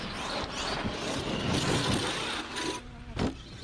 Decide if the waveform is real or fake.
real